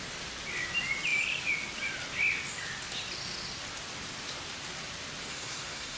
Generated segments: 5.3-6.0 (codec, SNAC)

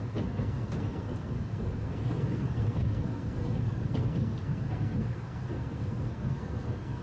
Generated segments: 0.0-7.0 (codec, SNAC)

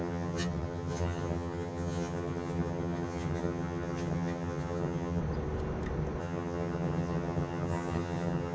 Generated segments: 0.0-5.2 (vocoder, HiFi-GAN); 6.2-8.5

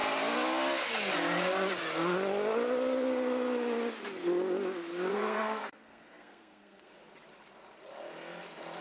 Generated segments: 5.1-6.9 (codec, SNAC)

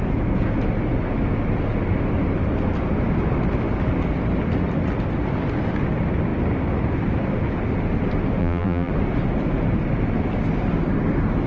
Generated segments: 8.4-8.9 (vocoder, BigVGAN v2)